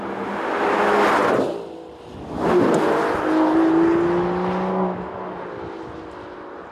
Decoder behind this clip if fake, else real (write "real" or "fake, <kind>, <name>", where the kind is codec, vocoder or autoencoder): real